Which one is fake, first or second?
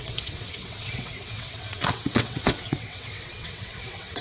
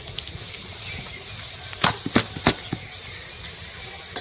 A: first